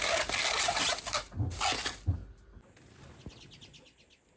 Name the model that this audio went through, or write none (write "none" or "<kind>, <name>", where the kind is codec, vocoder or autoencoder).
none